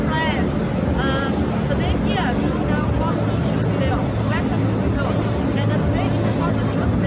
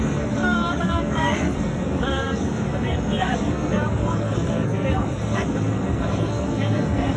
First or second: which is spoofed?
second